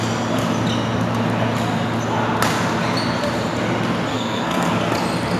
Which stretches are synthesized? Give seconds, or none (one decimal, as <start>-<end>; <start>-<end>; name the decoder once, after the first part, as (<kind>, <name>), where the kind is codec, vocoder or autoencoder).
4.1-4.7 (codec, SNAC)